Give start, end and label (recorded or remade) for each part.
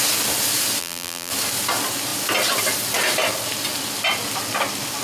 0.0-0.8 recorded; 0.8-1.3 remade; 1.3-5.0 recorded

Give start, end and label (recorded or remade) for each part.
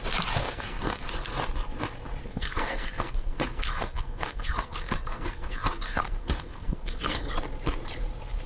0.0-0.4 recorded; 0.4-1.1 remade; 1.1-2.2 recorded; 2.2-7.3 remade; 7.3-8.5 recorded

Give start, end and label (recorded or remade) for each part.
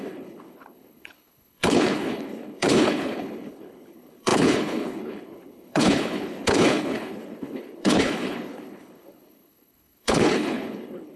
0.0-11.2 remade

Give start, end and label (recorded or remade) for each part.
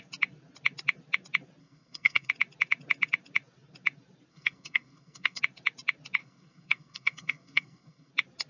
0.0-1.6 recorded; 1.6-2.3 remade; 2.3-4.3 recorded; 4.3-5.4 remade; 5.4-6.2 recorded; 6.2-8.1 remade; 8.1-8.5 recorded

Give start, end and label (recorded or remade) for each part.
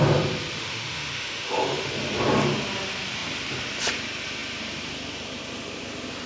0.0-0.6 recorded; 0.6-1.9 remade; 1.9-6.3 recorded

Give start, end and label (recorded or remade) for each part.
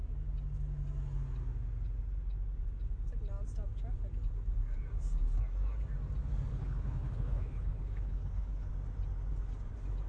0.0-6.5 recorded; 6.5-8.7 remade; 8.7-10.1 recorded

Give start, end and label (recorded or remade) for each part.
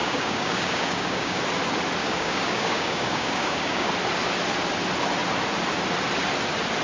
0.0-1.4 remade; 1.4-2.0 recorded; 2.0-3.9 remade; 3.9-6.8 recorded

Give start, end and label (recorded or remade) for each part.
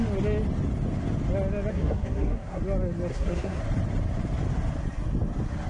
0.0-1.7 recorded; 1.7-2.6 remade; 2.6-3.1 recorded; 3.1-3.6 remade; 3.6-5.7 recorded